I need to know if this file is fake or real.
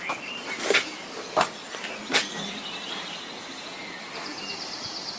real